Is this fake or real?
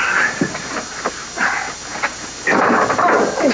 real